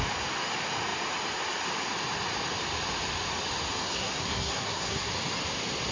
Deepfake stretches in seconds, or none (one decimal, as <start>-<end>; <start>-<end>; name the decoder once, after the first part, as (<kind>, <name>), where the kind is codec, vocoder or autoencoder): 3.8-5.1 (codec, SNAC)